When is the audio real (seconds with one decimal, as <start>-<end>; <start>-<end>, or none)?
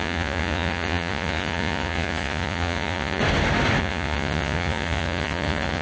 3.2-3.8